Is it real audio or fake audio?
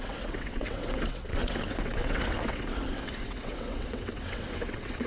fake